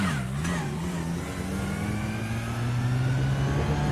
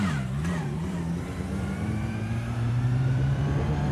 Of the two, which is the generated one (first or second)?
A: second